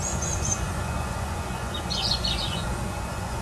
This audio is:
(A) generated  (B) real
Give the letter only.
A